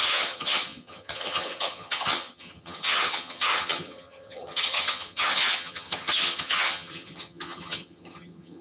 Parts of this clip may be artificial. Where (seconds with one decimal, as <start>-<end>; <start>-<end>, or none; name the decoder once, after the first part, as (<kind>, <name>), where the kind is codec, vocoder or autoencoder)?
0.0-8.6 (vocoder, HiFi-GAN)